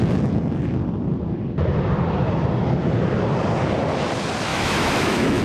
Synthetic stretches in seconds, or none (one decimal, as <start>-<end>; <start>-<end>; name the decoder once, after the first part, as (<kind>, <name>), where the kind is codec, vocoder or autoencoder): 4.5-5.4 (autoencoder, DAC-VAE)